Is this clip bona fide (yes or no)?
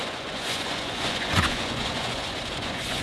no